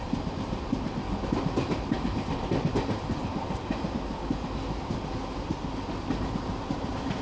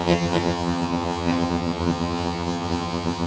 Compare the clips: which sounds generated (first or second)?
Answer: second